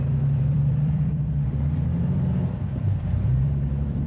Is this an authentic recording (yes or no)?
no